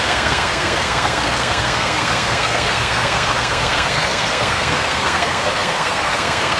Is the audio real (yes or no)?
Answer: no